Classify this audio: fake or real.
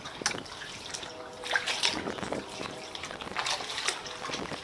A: real